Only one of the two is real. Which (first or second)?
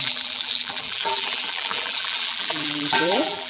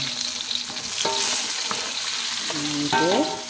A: second